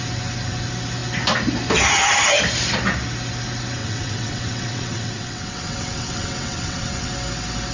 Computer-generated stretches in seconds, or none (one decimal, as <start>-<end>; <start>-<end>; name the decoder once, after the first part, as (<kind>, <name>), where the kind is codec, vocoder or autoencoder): 3.8-7.1 (vocoder, WaveNeXt)